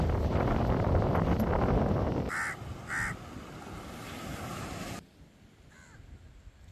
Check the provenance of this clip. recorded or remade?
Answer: recorded